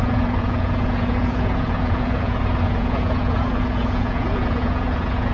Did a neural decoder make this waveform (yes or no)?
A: yes